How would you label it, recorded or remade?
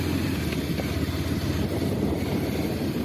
recorded